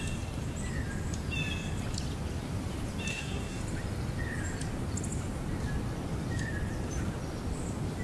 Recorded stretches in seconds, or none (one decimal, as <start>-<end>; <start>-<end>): 0.0-3.1; 3.6-8.0